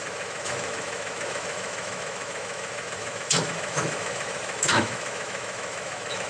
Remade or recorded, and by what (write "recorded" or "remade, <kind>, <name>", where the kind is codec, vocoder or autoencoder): remade, autoencoder, DAC-VAE